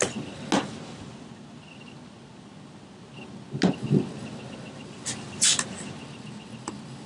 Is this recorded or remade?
recorded